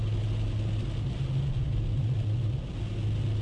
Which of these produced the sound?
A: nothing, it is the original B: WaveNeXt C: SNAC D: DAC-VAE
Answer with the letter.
A